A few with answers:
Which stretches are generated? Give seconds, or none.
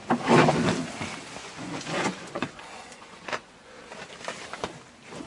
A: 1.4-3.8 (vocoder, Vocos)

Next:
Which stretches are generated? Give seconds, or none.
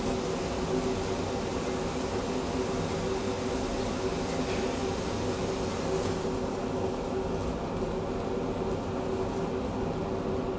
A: none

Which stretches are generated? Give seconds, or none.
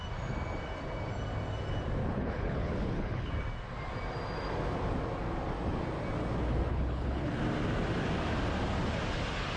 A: 2.0-3.3 (codec, HILCodec); 6.7-7.4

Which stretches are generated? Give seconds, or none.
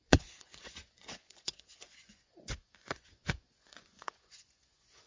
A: 0.0-5.1 (vocoder, Vocos)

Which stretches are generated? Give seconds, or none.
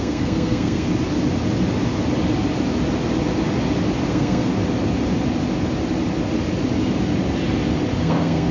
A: 0.0-0.9 (codec, SNAC); 4.1-4.5; 8.0-8.5